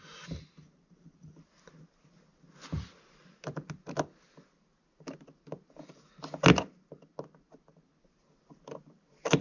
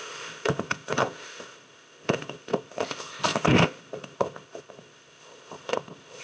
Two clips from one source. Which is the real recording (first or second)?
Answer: first